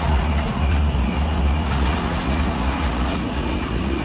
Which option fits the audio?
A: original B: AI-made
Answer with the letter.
B